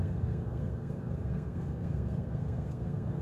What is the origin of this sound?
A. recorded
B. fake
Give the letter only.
B